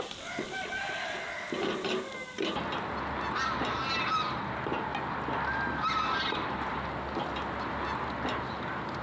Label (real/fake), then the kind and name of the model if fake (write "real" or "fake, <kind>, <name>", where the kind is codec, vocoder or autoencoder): real